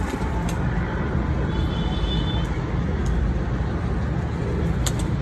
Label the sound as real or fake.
real